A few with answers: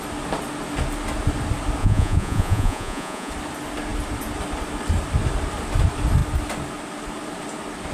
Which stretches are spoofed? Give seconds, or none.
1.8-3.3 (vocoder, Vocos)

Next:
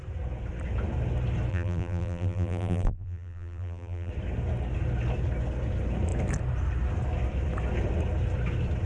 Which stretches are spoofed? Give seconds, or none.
1.5-4.1 (vocoder, BigVGAN v2)

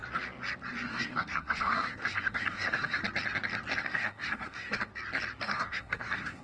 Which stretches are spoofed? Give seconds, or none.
0.9-3.0 (codec, SNAC); 3.8-4.9; 5.4-6.4

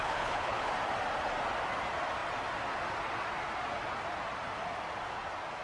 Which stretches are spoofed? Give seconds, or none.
0.0-0.7 (codec, HILCodec)

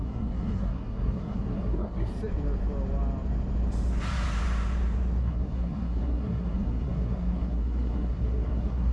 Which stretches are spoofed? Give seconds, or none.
0.0-2.1 (codec, SNAC); 5.2-8.9

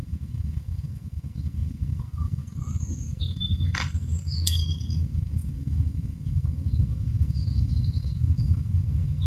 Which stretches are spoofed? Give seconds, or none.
0.0-9.3 (codec, SNAC)

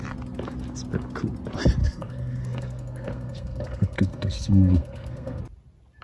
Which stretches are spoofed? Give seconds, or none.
1.8-5.4 (codec, SNAC)